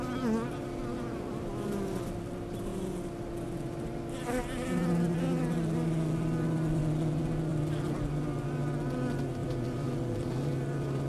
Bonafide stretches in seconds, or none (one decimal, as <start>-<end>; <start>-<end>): 0.0-0.9; 1.5-7.5; 8.1-9.4; 9.9-11.1